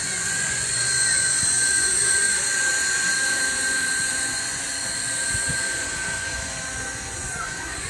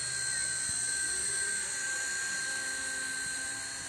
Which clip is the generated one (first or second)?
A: first